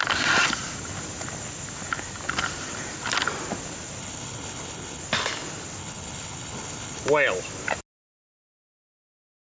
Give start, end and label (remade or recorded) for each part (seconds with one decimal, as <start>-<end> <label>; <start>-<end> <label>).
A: 0.0-4.0 recorded; 4.0-5.0 remade; 5.0-5.8 recorded; 5.8-7.0 remade; 7.0-9.6 recorded